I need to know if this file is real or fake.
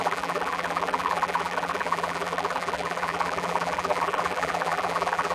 fake